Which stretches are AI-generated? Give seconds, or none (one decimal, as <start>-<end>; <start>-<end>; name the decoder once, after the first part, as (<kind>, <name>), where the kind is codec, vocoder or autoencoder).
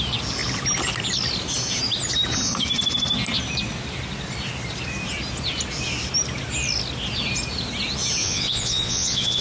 8.2-9.4 (vocoder, Vocos)